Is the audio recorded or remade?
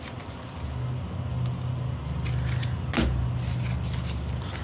recorded